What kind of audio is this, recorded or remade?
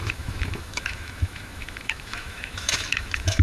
remade